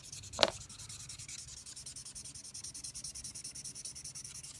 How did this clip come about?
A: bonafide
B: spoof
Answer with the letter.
A